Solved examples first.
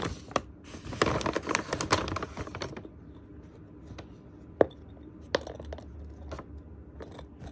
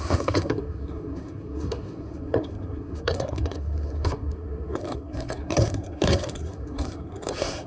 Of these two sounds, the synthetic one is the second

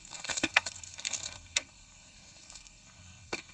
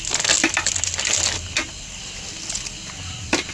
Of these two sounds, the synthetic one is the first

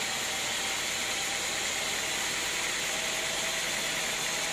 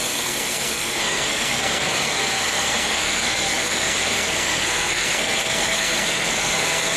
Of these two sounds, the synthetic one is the second